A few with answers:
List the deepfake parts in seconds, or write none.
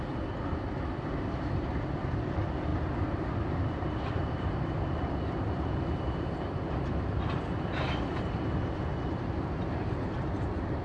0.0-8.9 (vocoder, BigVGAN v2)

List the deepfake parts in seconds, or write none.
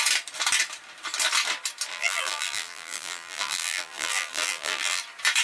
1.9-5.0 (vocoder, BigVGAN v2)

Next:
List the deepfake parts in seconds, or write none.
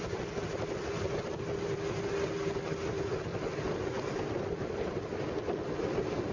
3.3-4.0 (vocoder, BigVGAN v2)